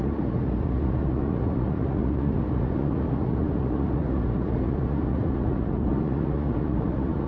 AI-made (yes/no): yes